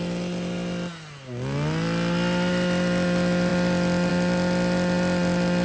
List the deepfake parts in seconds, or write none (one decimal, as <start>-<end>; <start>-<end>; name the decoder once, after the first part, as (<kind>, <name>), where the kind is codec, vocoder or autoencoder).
none